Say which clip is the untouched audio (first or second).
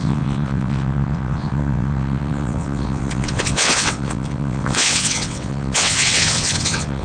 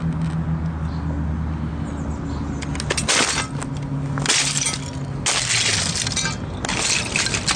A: second